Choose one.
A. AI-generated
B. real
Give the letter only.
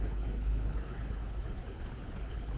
A